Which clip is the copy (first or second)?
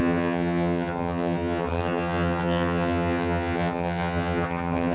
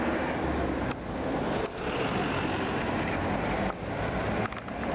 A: first